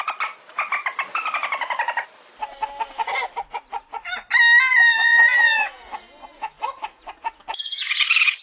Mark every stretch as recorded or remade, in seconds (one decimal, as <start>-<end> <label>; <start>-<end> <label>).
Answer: 0.0-4.7 recorded; 4.7-8.4 remade